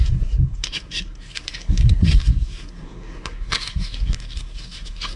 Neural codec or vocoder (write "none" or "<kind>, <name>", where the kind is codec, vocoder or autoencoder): codec, SNAC